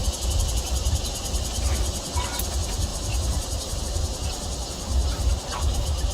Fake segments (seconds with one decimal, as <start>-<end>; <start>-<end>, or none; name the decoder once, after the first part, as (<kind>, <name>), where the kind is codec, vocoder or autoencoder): 2.9-3.8 (vocoder, BigVGAN v2)